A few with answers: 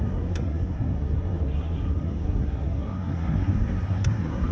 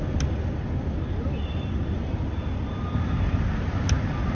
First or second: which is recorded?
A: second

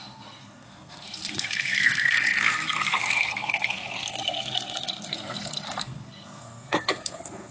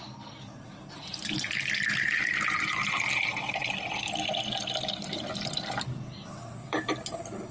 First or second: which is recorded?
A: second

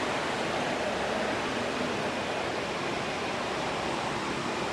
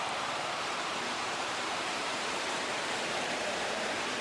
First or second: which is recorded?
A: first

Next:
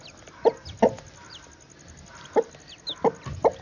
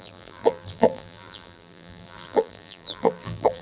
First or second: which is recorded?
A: first